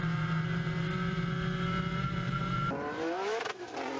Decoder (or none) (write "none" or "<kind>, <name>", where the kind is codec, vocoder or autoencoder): vocoder, BigVGAN v2